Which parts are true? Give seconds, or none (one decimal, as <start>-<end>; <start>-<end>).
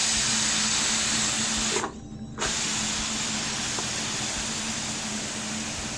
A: 0.0-6.0